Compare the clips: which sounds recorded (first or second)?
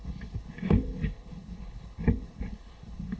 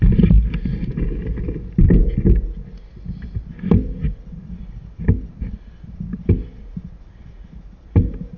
second